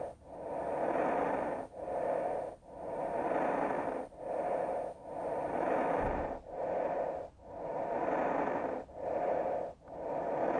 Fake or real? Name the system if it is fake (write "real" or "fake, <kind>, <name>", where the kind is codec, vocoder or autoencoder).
real